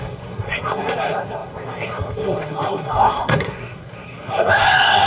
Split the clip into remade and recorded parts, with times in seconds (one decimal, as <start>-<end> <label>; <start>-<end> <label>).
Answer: 0.0-5.1 remade